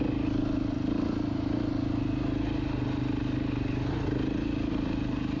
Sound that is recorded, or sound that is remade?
recorded